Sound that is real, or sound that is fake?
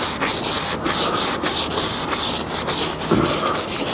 real